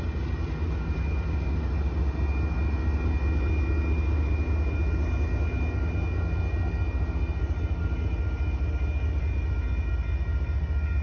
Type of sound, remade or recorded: recorded